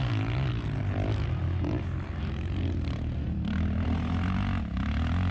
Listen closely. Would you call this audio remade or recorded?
recorded